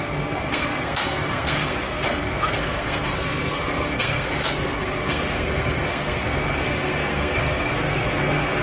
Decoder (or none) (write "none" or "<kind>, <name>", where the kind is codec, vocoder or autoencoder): codec, SNAC